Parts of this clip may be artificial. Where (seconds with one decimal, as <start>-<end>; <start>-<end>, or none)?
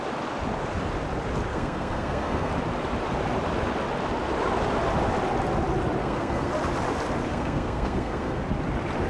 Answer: 1.5-2.5; 6.0-6.5; 7.3-8.4